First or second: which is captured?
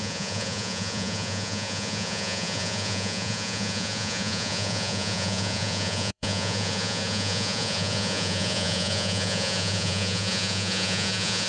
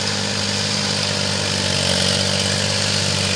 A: second